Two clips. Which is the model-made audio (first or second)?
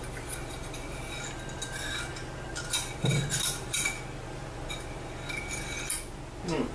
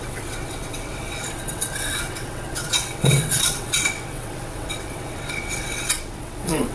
second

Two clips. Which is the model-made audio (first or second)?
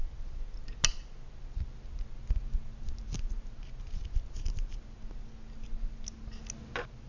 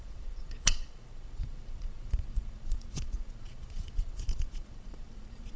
second